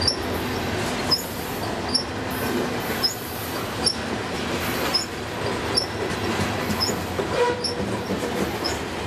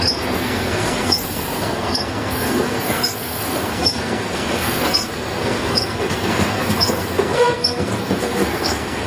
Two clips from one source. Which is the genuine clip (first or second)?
first